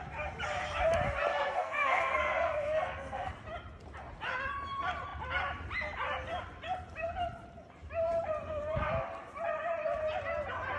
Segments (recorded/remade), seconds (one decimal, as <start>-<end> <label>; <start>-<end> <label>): 0.0-1.3 recorded; 1.3-3.3 remade; 3.3-10.8 recorded

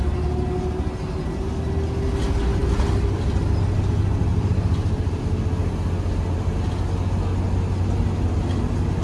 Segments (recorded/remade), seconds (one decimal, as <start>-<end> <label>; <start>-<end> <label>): 0.0-4.3 recorded; 4.3-5.2 remade; 5.2-9.0 recorded

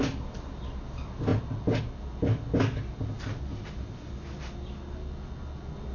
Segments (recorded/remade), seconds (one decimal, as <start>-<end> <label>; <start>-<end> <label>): 0.0-5.9 recorded

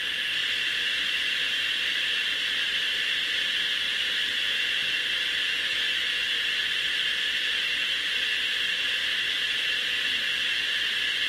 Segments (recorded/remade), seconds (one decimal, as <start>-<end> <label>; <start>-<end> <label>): 0.0-11.3 recorded

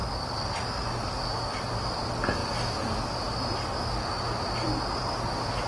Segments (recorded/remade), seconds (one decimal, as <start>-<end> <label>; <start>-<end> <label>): 0.0-5.7 recorded

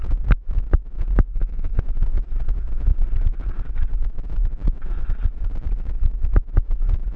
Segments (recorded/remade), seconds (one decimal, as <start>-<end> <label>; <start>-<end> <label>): 0.0-1.3 recorded; 1.3-1.8 remade; 1.8-7.2 recorded